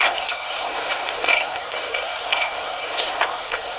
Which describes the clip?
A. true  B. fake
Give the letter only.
B